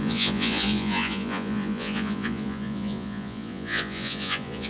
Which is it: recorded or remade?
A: remade